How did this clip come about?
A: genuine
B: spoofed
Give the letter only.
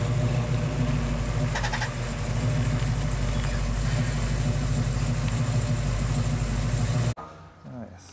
A